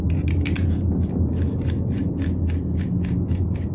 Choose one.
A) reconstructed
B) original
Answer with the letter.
B